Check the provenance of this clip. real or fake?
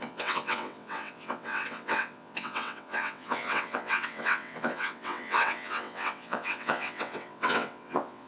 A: fake